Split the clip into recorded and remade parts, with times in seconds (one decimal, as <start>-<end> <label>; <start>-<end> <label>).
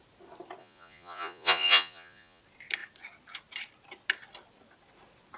0.0-0.6 recorded; 0.6-2.4 remade; 2.4-5.4 recorded